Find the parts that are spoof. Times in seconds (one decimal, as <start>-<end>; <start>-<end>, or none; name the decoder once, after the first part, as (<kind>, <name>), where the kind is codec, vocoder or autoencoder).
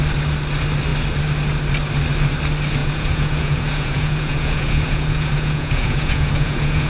2.8-6.9 (vocoder, Vocos)